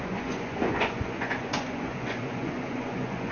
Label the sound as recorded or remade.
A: remade